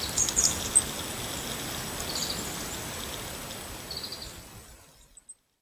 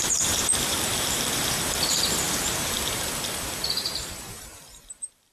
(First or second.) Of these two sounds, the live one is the first